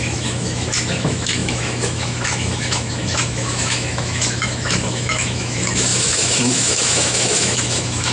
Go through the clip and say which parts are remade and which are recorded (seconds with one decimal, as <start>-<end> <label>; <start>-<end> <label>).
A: 0.0-8.1 remade